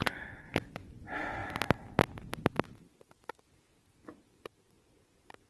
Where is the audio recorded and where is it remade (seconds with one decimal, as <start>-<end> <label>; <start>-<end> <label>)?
0.0-1.4 remade; 1.4-4.7 recorded; 4.7-5.5 remade

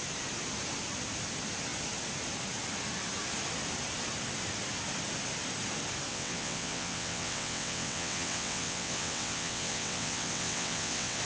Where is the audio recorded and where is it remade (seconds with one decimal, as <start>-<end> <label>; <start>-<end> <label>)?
0.0-6.1 recorded; 6.1-11.2 remade

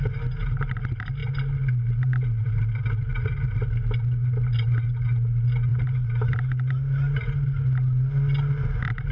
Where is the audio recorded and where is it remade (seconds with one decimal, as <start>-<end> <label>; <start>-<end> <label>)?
0.0-9.1 recorded

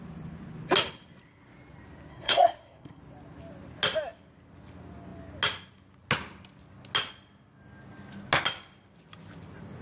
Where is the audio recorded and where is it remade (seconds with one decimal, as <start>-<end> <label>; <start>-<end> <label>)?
0.0-2.1 recorded; 2.1-3.0 remade; 3.0-9.8 recorded